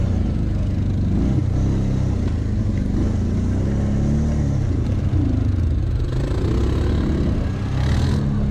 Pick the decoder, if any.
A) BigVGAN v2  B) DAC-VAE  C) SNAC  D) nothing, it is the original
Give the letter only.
D